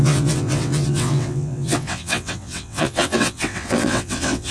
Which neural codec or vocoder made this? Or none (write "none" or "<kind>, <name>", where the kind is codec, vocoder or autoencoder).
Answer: vocoder, WaveNeXt